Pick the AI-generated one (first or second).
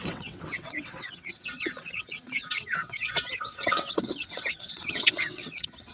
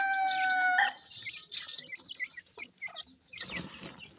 first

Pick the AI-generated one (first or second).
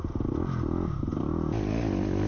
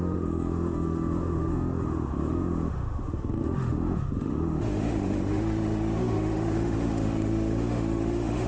second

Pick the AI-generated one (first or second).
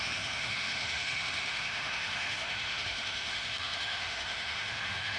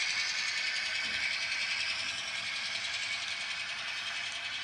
first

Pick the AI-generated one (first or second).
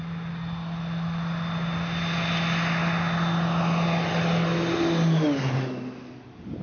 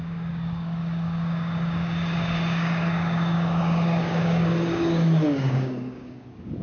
second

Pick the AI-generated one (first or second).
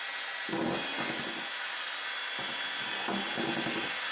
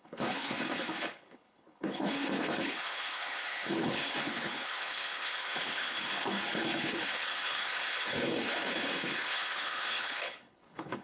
second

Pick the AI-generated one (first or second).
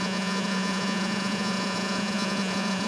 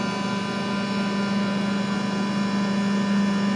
first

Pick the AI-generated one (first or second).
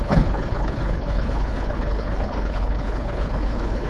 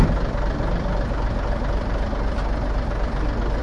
first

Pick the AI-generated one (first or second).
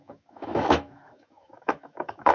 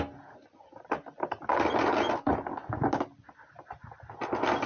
first